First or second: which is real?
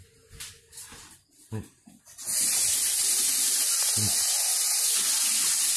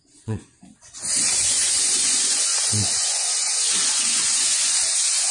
first